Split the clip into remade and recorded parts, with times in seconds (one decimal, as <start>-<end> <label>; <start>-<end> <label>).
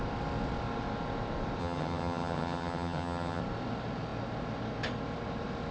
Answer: 0.0-1.6 recorded; 1.6-3.4 remade; 3.4-5.7 recorded